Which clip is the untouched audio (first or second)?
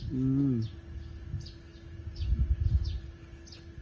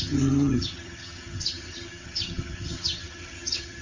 first